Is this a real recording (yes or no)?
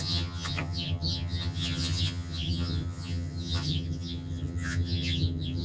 no